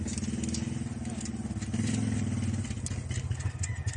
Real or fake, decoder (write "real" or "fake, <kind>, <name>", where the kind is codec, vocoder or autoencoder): real